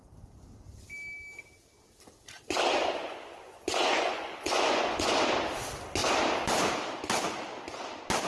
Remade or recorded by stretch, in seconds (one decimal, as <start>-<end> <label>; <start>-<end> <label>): 0.0-3.0 recorded; 3.0-5.1 remade; 5.1-8.3 recorded